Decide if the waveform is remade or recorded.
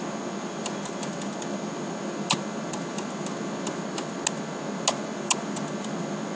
recorded